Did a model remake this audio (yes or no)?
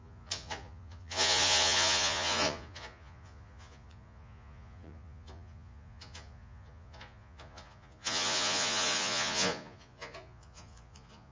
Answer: yes